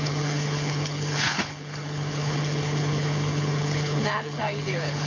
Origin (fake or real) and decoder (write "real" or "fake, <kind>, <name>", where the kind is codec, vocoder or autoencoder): fake, codec, HILCodec